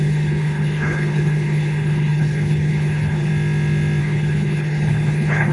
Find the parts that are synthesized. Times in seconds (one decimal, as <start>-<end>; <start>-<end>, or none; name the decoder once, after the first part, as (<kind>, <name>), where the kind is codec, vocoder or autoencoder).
0.0-3.3 (codec, HILCodec); 4.0-5.5